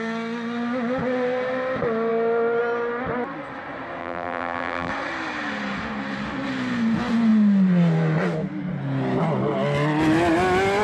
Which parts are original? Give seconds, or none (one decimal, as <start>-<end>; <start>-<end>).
0.0-4.0; 4.9-10.8